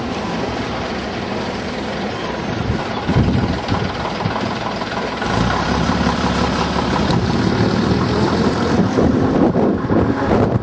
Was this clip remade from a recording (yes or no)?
yes